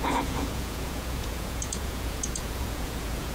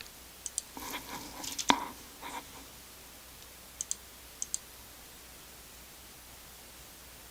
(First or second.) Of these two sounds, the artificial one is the first